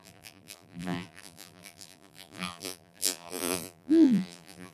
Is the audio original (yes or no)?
no